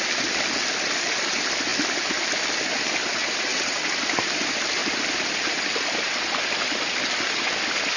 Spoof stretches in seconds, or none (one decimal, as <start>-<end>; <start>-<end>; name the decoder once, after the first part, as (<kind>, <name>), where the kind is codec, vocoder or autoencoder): 3.2-3.8 (vocoder, WaveNeXt)